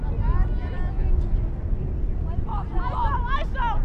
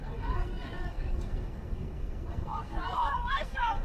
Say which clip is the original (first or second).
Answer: first